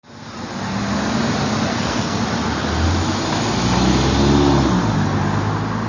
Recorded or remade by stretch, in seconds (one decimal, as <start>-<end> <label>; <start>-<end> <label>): 0.0-1.7 recorded; 1.7-2.2 remade; 2.2-5.9 recorded